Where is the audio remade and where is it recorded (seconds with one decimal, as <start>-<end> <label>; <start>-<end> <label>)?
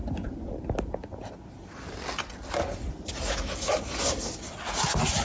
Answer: 0.0-5.2 recorded